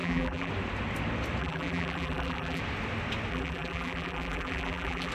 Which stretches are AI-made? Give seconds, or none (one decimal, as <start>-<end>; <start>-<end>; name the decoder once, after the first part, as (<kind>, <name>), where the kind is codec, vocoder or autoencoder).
0.0-0.5 (vocoder, BigVGAN v2); 1.4-2.6; 3.3-5.1